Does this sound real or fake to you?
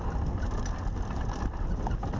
real